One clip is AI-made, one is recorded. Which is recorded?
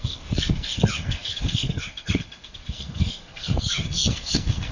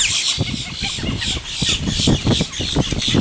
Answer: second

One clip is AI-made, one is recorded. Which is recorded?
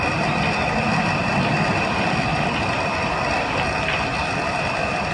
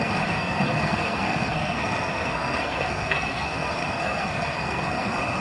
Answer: first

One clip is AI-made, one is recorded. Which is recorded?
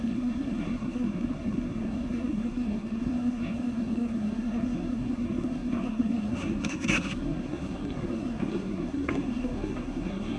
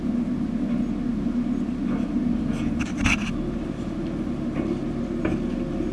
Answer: second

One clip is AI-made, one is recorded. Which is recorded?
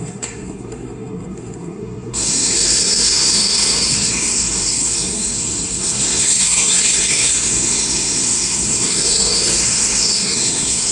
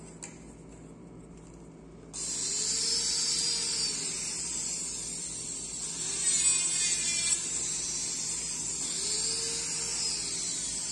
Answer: second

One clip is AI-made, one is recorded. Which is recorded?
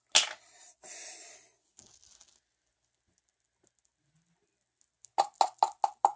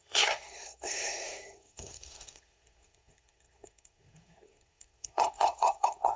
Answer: first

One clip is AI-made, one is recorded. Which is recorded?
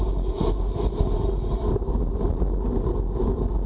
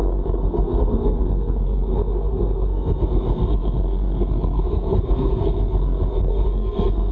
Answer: first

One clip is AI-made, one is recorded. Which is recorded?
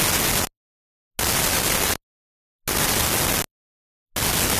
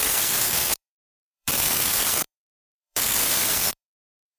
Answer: first